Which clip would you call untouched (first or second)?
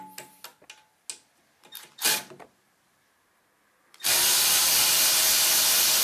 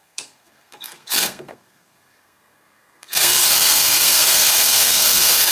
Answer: first